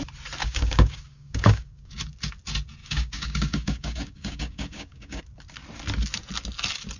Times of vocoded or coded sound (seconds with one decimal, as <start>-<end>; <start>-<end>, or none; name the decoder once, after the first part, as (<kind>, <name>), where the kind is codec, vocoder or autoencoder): 0.4-2.0 (codec, DAC); 2.8-5.2